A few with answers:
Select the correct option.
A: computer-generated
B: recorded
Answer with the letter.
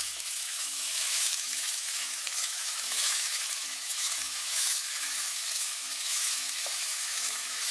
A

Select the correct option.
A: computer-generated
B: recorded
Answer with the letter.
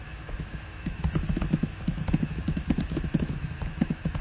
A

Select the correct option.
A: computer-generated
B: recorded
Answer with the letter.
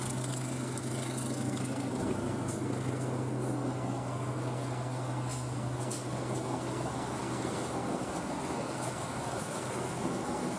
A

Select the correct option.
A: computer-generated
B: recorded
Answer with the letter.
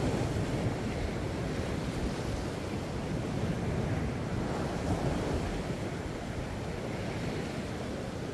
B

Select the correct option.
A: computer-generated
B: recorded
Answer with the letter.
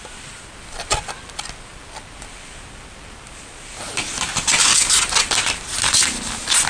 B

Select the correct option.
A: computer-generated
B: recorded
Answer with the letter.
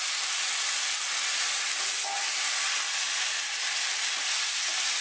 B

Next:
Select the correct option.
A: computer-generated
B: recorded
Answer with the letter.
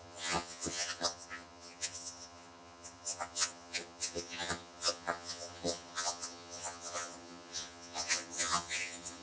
A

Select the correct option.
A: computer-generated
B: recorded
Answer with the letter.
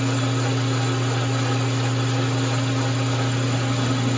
B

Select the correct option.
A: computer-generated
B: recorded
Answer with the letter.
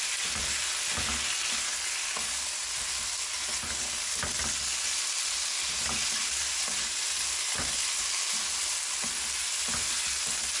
B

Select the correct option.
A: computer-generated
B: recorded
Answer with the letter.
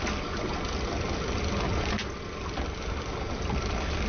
B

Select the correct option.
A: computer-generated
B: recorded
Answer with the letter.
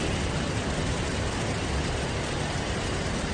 B